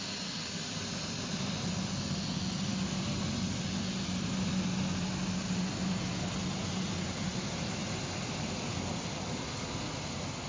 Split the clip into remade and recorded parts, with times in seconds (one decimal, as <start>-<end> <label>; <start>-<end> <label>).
0.0-10.5 recorded